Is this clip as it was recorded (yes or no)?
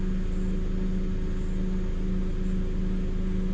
yes